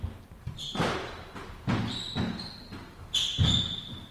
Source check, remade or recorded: recorded